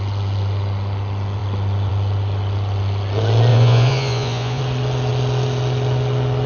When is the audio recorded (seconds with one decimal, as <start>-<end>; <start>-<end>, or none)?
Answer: 0.0-3.5; 4.6-6.5